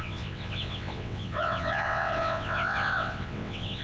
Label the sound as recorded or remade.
remade